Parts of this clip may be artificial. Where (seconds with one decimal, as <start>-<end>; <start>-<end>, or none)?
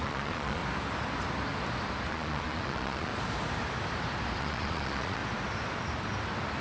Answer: 0.0-0.6; 2.1-3.1; 4.4-5.2